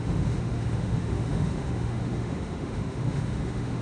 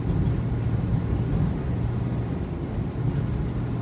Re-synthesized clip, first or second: first